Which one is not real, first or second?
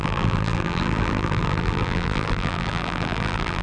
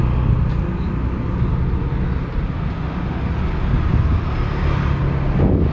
first